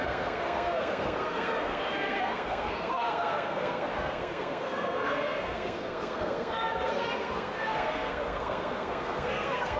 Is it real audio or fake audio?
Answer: fake